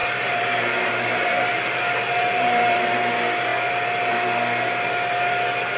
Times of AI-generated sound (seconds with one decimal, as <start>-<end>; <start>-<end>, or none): 0.0-2.8